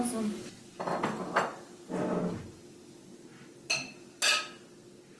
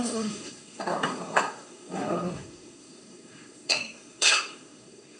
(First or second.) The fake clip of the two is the second